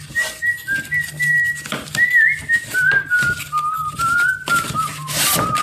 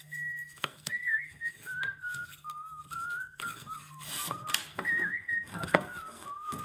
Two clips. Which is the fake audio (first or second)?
second